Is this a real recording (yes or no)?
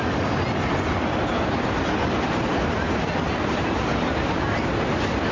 no